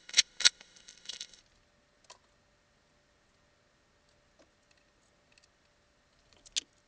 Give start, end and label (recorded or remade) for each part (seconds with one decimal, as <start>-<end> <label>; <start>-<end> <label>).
0.0-1.4 remade; 1.4-6.9 recorded